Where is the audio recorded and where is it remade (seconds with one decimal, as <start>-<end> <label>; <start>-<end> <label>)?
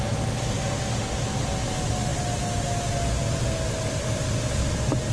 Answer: 0.0-5.1 recorded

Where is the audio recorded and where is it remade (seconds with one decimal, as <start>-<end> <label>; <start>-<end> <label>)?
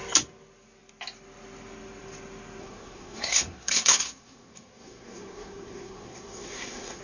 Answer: 0.0-2.6 recorded; 2.6-7.0 remade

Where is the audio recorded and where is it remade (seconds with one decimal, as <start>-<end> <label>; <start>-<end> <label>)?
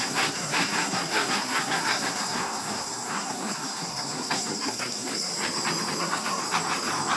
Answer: 0.0-5.3 remade; 5.3-6.0 recorded; 6.0-6.4 remade; 6.4-7.2 recorded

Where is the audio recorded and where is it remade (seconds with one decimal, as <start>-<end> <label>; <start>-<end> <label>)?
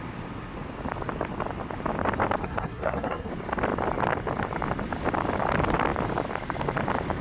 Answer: 0.0-2.4 recorded; 2.4-3.3 remade; 3.3-7.2 recorded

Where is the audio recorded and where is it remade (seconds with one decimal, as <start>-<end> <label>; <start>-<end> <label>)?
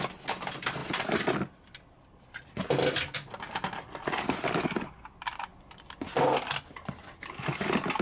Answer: 0.0-8.0 recorded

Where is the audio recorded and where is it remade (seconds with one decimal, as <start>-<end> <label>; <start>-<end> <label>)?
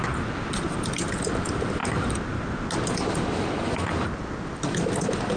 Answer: 0.0-5.4 recorded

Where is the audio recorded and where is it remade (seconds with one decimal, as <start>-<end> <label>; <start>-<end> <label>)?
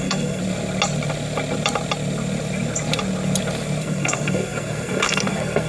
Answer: 0.0-0.4 remade; 0.4-3.8 recorded; 3.8-5.7 remade